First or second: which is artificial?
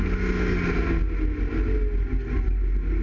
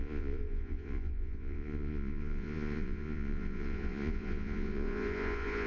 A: second